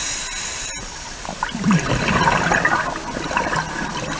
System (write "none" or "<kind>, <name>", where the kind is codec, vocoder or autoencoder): none